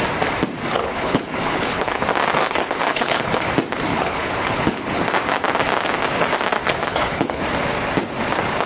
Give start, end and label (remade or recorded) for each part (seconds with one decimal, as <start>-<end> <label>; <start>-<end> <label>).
0.0-0.8 recorded; 0.8-2.0 remade; 2.0-2.4 recorded; 2.4-3.4 remade; 3.4-3.9 recorded; 3.9-5.0 remade; 5.0-6.8 recorded; 6.8-7.4 remade; 7.4-8.7 recorded